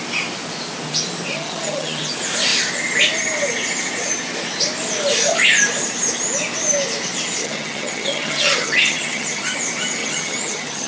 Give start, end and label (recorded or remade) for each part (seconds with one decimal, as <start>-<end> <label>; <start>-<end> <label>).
0.0-1.3 recorded; 1.3-2.0 remade; 2.0-7.4 recorded; 7.4-9.6 remade; 9.6-10.0 recorded; 10.0-10.9 remade